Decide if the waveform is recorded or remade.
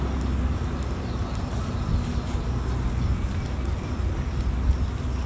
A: recorded